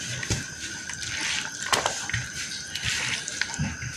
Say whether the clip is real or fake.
fake